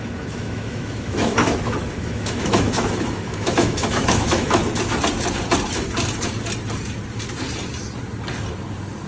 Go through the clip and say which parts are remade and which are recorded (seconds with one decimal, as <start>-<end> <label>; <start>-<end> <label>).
0.0-4.6 remade; 4.6-9.1 recorded

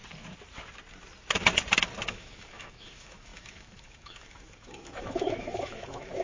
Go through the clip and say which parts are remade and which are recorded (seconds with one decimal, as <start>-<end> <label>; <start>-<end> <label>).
0.0-2.1 recorded; 2.1-6.2 remade

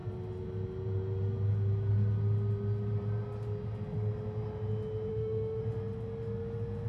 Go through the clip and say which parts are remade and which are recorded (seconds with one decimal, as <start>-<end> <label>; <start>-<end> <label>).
0.0-5.1 recorded; 5.1-5.6 remade; 5.6-6.9 recorded